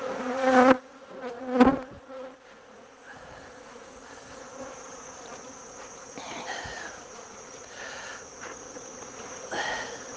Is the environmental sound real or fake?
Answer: fake